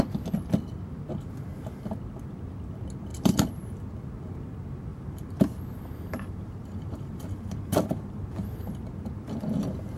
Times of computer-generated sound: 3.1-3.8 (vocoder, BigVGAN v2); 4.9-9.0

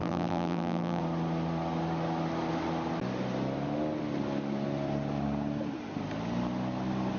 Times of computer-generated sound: 0.0-1.0 (vocoder, BigVGAN v2)

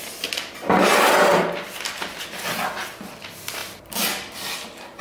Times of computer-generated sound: 0.0-1.3 (vocoder, BigVGAN v2); 3.1-5.0

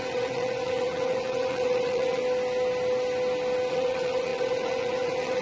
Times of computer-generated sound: 0.0-2.2 (vocoder, WaveNeXt); 3.7-5.4

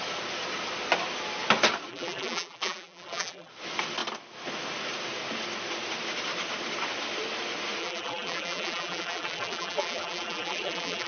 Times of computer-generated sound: 1.9-3.5 (vocoder, BigVGAN v2); 7.8-11.1

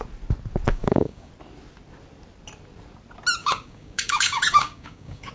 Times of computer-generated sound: 0.7-1.3 (codec, DAC); 3.4-5.3

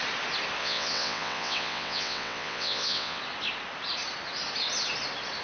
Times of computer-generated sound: 0.6-3.2 (vocoder, WaveNeXt)

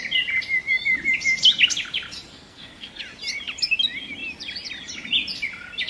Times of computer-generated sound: 2.3-3.0 (codec, SNAC)